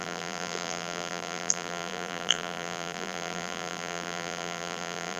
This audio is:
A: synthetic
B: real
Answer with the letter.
A